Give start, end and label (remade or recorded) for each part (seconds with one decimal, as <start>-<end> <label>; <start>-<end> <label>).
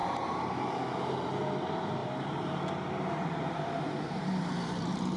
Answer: 0.0-1.3 remade; 1.3-2.0 recorded; 2.0-5.2 remade